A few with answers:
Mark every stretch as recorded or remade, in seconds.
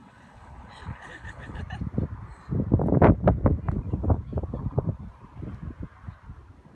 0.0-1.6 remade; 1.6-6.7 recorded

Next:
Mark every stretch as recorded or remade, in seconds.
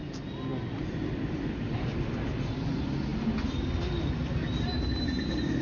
0.0-5.6 recorded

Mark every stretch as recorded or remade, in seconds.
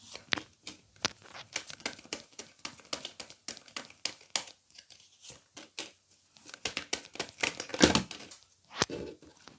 0.0-9.6 recorded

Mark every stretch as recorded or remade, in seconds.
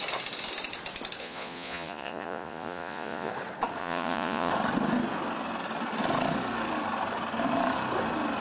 0.0-1.2 recorded; 1.2-3.3 remade; 3.3-3.8 recorded; 3.8-4.5 remade; 4.5-8.4 recorded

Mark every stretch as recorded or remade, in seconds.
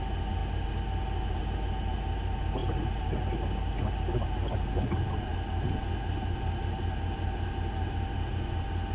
0.0-2.6 recorded; 2.6-5.6 remade; 5.6-8.9 recorded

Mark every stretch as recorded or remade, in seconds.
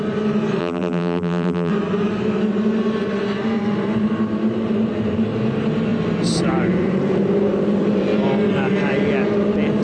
0.0-0.6 recorded; 0.6-1.7 remade; 1.7-9.8 recorded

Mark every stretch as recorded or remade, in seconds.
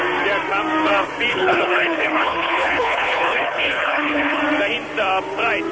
0.0-1.3 recorded; 1.3-4.4 remade; 4.4-5.7 recorded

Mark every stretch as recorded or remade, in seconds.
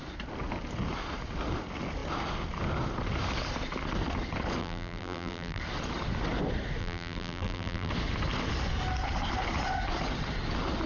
0.0-4.6 recorded; 4.6-5.6 remade; 5.6-6.8 recorded; 6.8-7.9 remade; 7.9-10.9 recorded